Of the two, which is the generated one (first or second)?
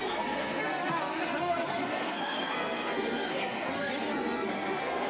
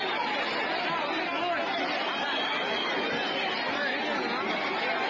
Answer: first